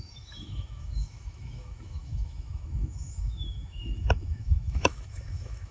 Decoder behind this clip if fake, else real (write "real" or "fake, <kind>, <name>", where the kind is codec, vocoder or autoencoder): fake, autoencoder, DAC-VAE